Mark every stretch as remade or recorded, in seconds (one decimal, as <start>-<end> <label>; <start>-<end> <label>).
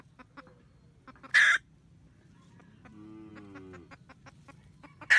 0.0-5.2 recorded